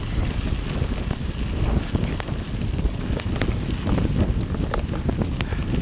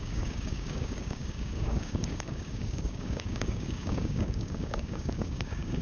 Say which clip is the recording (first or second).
first